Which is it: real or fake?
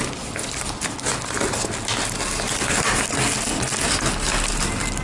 real